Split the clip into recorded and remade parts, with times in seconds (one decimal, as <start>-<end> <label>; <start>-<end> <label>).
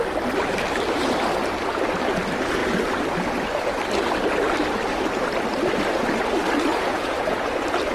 0.0-6.7 recorded; 6.7-7.5 remade; 7.5-7.9 recorded